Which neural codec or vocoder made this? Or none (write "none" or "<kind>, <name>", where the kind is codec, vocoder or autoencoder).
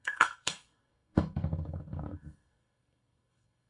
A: codec, SNAC